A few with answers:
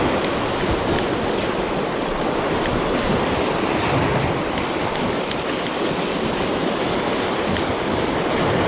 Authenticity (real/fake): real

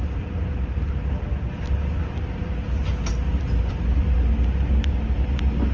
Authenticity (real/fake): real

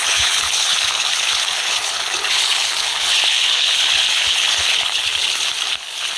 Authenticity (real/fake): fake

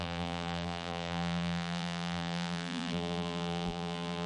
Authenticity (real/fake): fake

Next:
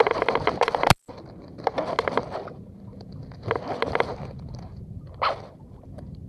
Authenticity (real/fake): real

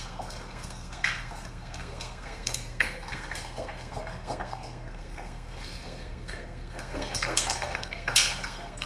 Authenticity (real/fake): fake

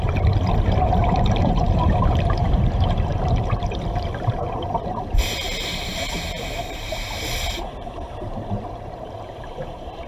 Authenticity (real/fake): fake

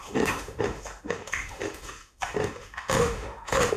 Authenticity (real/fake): fake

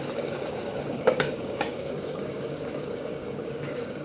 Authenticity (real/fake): fake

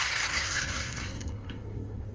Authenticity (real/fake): fake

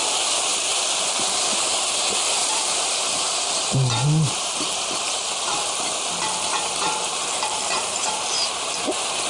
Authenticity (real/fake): fake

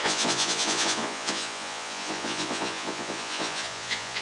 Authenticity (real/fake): fake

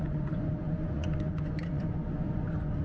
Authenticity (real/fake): fake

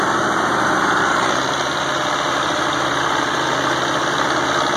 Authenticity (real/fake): real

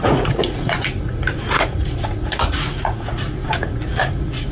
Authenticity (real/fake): fake